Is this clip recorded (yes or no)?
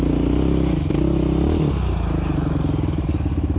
yes